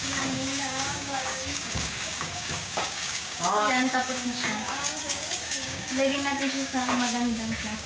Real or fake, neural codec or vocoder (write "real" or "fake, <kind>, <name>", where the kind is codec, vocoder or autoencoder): fake, codec, DAC